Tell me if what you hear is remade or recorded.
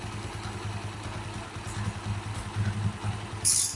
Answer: recorded